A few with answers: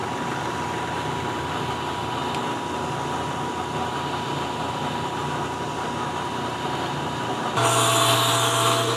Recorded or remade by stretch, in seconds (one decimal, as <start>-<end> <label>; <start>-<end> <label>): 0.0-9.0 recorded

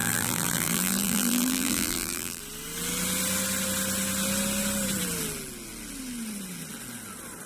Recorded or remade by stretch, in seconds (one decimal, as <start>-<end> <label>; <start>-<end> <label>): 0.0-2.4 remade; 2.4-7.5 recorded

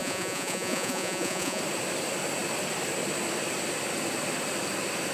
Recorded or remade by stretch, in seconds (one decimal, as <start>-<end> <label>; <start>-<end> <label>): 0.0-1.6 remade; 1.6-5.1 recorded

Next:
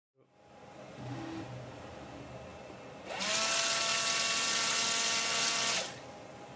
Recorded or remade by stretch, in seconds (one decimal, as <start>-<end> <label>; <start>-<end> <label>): 0.0-6.6 recorded

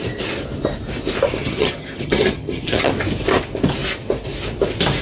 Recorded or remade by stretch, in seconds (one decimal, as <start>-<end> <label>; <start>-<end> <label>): 0.0-1.4 recorded; 1.4-2.9 remade; 2.9-5.0 recorded